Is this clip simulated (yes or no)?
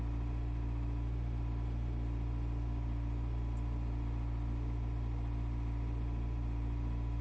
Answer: no